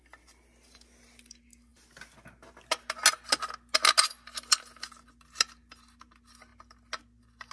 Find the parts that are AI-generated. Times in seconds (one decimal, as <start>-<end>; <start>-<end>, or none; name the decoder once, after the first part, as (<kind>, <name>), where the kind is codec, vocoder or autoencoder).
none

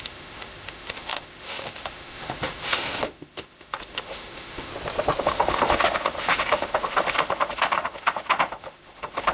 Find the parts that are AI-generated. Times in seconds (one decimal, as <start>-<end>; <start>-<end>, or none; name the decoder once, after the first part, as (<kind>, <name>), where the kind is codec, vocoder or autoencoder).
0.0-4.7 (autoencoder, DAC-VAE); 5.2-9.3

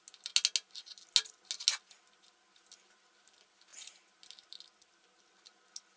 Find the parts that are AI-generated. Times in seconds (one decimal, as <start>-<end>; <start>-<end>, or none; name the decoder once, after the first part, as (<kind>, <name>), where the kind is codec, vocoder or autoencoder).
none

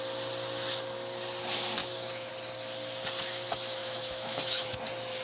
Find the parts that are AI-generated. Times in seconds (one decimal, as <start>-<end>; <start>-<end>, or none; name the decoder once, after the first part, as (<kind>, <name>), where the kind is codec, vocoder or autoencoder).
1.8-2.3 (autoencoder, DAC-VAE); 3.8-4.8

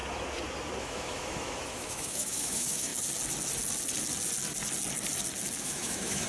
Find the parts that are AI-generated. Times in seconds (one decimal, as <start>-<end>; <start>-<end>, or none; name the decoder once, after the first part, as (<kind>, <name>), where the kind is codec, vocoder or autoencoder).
0.8-2.9 (autoencoder, DAC-VAE); 5.6-6.3

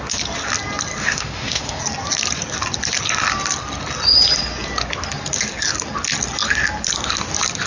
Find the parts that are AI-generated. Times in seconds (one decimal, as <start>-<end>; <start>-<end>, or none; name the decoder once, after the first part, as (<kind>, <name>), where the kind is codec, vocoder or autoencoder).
1.0-1.8 (autoencoder, DAC-VAE)